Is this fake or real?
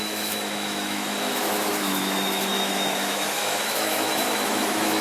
fake